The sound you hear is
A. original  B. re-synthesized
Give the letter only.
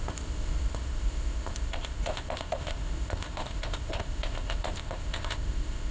B